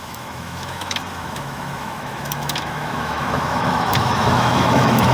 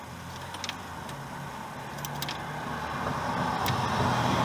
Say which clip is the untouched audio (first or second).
second